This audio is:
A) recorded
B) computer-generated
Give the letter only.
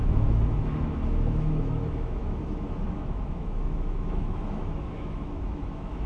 B